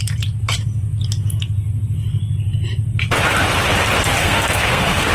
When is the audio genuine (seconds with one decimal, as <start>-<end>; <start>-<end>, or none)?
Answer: 0.0-4.2